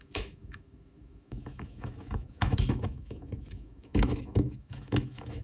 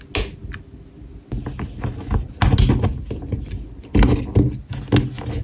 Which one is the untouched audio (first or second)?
second